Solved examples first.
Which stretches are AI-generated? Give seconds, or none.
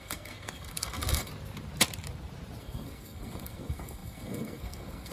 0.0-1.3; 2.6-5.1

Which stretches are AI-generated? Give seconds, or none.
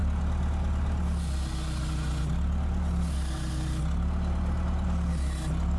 none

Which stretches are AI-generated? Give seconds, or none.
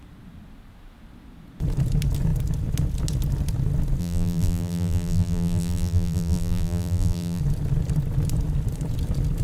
4.0-7.4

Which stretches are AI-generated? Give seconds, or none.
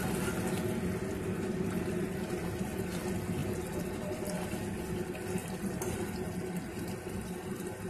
3.4-3.9; 5.4-6.0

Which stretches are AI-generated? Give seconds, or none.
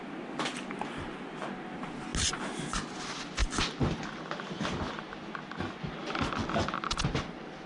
none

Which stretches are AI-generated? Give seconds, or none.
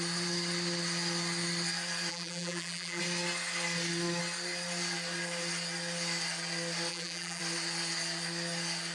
2.1-3.0; 6.9-7.4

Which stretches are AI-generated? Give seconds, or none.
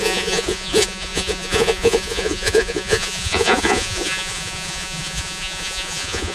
0.0-6.3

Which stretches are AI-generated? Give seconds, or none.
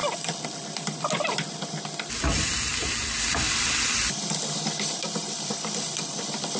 2.1-2.7; 3.6-6.6